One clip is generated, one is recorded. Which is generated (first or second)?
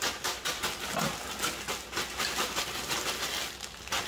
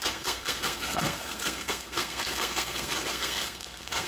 second